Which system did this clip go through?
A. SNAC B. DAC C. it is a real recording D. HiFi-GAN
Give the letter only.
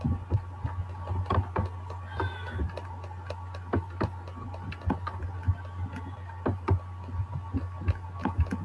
C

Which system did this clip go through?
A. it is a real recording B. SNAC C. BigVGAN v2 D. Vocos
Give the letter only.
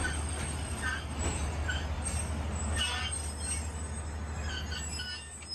A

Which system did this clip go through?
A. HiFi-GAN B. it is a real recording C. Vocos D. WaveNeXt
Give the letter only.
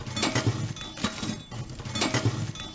B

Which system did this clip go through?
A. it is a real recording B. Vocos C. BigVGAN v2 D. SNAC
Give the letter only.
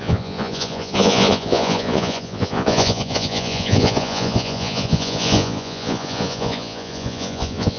B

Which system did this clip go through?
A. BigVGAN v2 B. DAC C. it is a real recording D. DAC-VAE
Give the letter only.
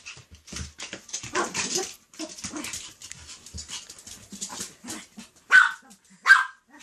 A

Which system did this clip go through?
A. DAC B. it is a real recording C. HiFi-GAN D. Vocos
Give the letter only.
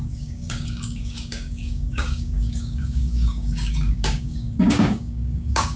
A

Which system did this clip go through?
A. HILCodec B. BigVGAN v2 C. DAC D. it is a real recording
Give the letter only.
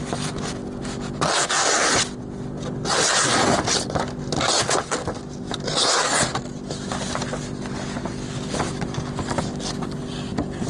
D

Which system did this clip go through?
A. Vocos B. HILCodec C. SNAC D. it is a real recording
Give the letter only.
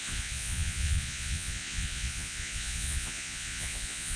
A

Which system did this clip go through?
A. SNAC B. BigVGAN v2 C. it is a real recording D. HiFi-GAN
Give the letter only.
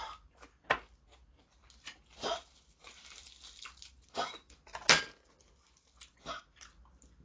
C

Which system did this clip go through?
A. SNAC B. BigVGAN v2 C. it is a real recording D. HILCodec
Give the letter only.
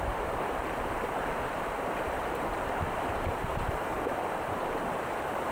B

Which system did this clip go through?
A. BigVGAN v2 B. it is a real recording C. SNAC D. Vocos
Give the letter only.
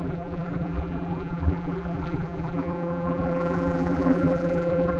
A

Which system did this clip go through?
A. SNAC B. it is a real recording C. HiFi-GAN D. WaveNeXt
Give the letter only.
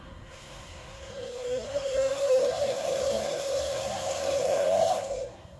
A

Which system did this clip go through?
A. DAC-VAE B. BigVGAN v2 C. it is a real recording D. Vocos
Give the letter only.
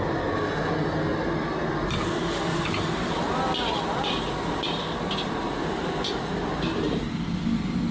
C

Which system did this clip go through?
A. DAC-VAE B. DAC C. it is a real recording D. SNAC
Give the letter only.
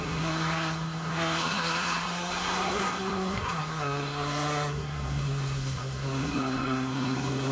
D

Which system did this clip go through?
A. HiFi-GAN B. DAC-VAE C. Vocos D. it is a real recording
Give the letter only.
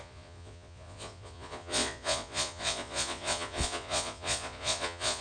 C